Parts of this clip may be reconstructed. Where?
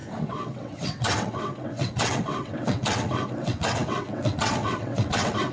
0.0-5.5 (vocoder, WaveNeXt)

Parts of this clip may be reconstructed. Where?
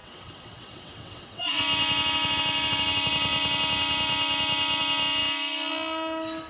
0.0-1.6 (vocoder, WaveNeXt)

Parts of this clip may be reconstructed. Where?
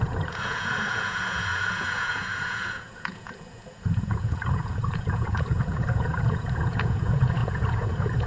0.0-8.3 (vocoder, Vocos)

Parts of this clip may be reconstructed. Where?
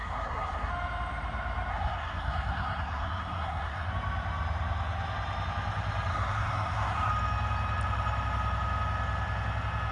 0.0-0.7 (codec, SNAC); 1.7-3.9; 6.1-7.1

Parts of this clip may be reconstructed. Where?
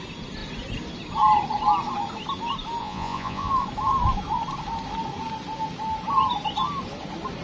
2.8-3.5 (vocoder, Vocos)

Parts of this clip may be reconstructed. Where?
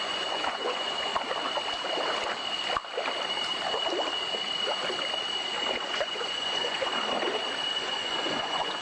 0.0-1.1 (vocoder, Vocos); 5.7-6.9; 7.8-8.8